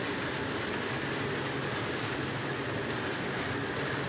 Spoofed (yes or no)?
no